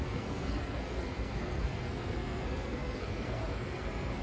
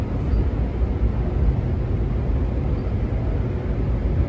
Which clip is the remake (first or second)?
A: first